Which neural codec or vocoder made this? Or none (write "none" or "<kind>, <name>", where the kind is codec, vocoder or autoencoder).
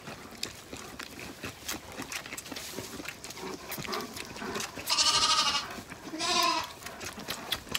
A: none